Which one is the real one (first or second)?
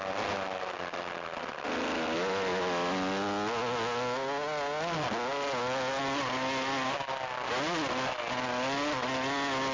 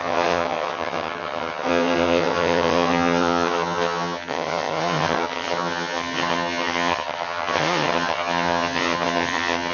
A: first